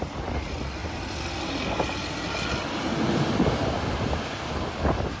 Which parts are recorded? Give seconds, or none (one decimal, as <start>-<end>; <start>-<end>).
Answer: 0.0-5.2